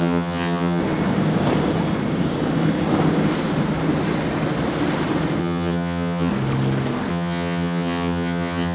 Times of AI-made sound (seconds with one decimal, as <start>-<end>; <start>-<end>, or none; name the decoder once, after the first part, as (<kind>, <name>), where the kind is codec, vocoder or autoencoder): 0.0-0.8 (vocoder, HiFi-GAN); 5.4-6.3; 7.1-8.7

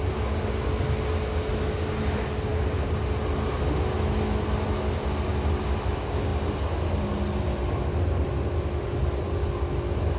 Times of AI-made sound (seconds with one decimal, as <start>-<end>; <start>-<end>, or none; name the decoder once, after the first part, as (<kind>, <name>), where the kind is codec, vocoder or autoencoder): none

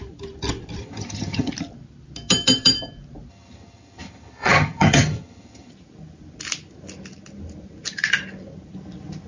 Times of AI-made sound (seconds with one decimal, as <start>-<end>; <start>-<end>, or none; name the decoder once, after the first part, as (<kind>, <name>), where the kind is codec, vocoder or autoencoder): 0.8-1.5 (vocoder, HiFi-GAN); 3.3-5.7

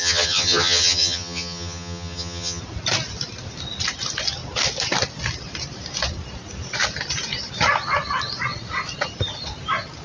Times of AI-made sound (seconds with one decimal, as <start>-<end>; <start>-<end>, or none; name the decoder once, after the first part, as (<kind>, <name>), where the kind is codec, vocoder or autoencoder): 0.0-2.6 (vocoder, HiFi-GAN)

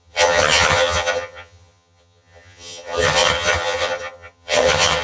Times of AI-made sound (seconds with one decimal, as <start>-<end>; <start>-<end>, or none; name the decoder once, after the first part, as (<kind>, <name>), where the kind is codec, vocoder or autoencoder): 0.0-5.0 (vocoder, HiFi-GAN)

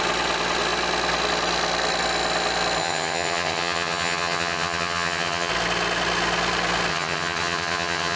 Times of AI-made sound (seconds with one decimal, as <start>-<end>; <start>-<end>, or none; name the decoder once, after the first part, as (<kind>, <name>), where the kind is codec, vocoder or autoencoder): 2.8-5.5 (vocoder, HiFi-GAN); 6.9-8.2